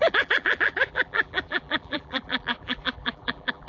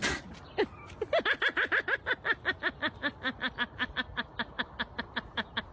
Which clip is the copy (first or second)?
first